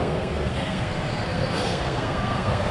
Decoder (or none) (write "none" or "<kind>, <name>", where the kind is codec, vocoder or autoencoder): codec, SNAC